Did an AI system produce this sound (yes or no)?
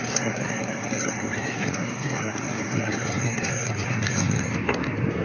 yes